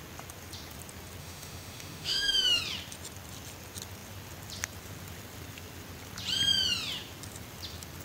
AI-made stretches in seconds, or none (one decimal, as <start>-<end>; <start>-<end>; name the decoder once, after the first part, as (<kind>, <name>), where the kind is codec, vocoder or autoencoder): 1.2-2.6 (autoencoder, DAC-VAE)